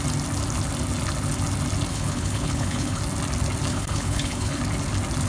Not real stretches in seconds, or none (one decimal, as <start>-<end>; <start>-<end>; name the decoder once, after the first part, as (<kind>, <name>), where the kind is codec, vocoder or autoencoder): 1.9-3.0 (codec, HILCodec); 3.7-4.6